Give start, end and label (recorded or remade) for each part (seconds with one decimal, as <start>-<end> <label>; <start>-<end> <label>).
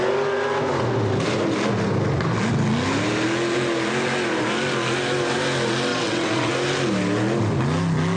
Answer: 0.0-5.9 recorded; 5.9-6.5 remade; 6.5-8.2 recorded